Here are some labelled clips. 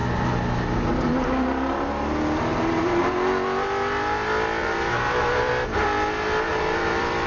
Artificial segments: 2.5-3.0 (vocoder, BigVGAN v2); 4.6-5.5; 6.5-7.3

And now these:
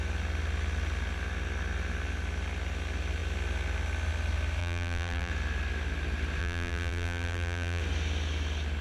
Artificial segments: 4.6-5.3 (vocoder, BigVGAN v2); 6.4-7.8

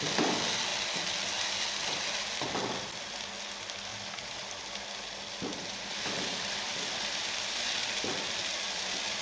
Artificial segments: 3.9-9.2 (vocoder, BigVGAN v2)

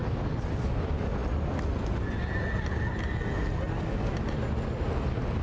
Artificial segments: none

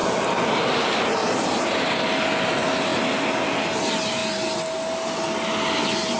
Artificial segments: 4.2-6.2 (vocoder, BigVGAN v2)